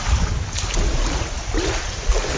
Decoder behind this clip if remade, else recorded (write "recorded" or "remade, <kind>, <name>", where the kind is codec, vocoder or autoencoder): recorded